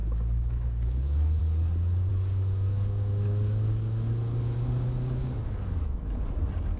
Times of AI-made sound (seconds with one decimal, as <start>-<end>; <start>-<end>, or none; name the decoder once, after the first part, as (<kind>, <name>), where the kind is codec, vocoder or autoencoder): 0.0-1.4 (codec, DAC); 2.1-6.2